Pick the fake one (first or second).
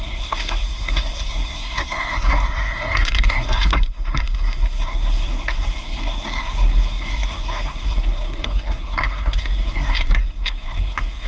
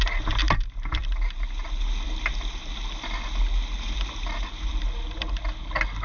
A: first